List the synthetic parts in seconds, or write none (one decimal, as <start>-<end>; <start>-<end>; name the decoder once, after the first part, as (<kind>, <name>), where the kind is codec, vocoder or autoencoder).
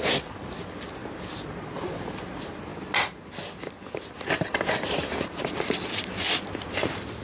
none